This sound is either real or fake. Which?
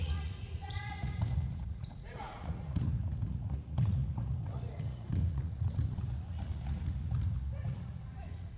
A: fake